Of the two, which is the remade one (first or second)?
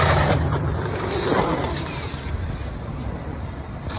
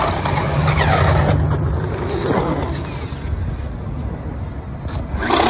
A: first